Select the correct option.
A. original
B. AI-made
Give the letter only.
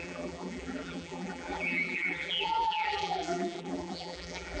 B